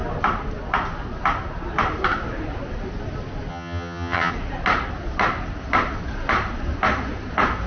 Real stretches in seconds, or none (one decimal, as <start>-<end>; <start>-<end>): 0.0-3.5; 4.3-7.7

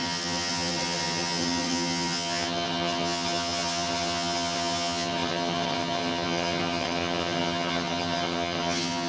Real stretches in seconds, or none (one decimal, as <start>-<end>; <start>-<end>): none

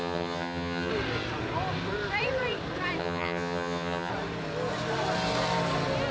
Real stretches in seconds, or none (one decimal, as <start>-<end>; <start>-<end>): 0.9-3.0; 4.1-6.1